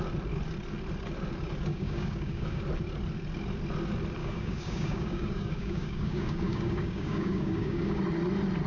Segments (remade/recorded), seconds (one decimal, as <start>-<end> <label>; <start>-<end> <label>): 0.0-1.7 recorded; 1.7-2.6 remade; 2.6-4.2 recorded; 4.2-8.0 remade; 8.0-8.7 recorded